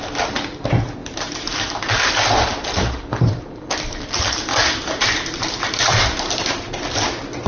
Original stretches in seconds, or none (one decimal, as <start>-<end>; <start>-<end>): 0.0-1.0; 2.1-2.7; 3.7-4.5; 6.7-7.5